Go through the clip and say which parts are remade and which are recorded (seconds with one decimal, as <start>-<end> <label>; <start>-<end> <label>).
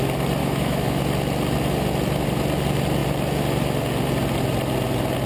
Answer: 0.0-0.4 recorded; 0.4-1.0 remade; 1.0-5.3 recorded